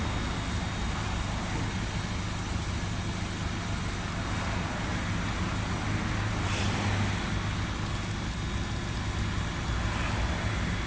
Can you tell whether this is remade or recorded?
recorded